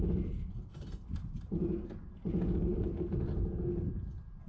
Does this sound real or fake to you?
real